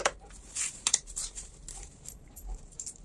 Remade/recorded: remade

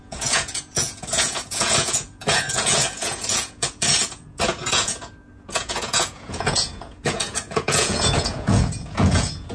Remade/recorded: remade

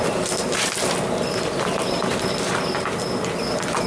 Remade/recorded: recorded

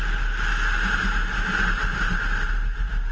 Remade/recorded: recorded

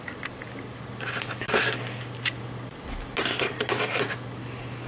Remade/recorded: recorded